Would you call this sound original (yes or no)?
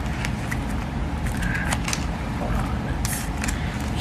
yes